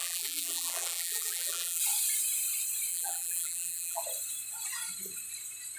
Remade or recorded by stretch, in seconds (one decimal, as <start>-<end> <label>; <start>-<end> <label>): 0.0-1.8 remade; 1.8-2.9 recorded; 2.9-4.0 remade; 4.0-5.8 recorded